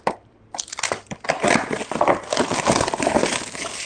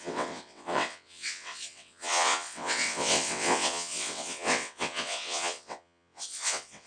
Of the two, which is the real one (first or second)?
first